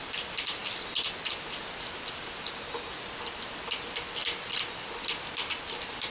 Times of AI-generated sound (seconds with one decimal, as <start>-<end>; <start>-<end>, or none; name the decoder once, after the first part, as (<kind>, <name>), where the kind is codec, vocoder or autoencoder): 4.2-5.5 (vocoder, BigVGAN v2)